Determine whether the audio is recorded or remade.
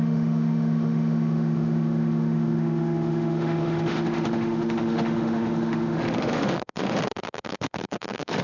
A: remade